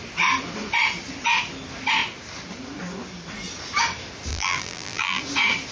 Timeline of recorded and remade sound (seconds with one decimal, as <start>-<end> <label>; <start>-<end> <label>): 0.0-4.3 recorded; 4.3-5.2 remade; 5.2-5.7 recorded